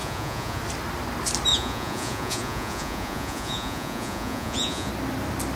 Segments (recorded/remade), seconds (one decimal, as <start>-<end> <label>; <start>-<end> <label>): 0.0-0.6 remade; 0.6-1.5 recorded; 1.5-4.9 remade; 4.9-5.6 recorded